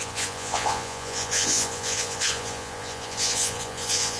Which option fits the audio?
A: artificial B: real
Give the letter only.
A